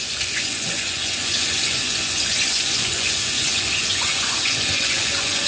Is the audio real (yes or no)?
no